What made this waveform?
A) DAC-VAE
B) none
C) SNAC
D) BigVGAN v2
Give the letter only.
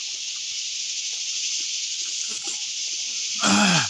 B